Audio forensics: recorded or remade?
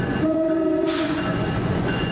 remade